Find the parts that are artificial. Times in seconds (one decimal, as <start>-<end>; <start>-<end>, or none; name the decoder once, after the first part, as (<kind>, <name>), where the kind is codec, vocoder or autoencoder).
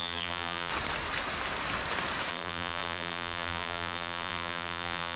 0.0-0.7 (vocoder, BigVGAN v2); 2.3-5.2